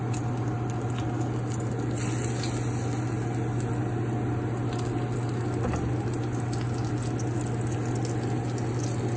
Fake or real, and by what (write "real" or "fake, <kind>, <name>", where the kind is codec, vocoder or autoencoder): real